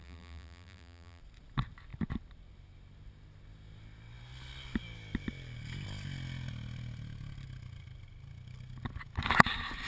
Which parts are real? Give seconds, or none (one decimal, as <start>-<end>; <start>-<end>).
1.2-9.9